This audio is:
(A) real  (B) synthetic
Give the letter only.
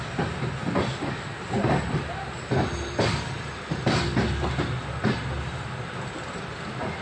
A